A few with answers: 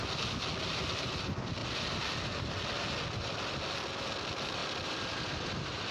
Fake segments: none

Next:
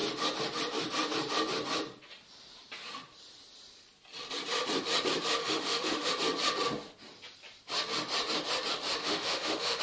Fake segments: 5.4-6.1; 9.0-9.8

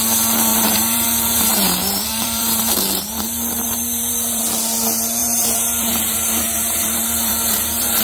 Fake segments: 0.5-4.4; 5.2-8.0

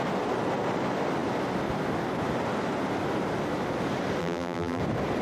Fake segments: 4.2-4.8

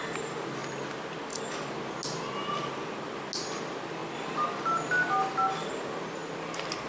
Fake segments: none

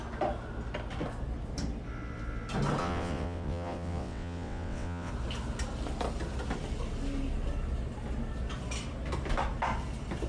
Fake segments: 2.8-5.1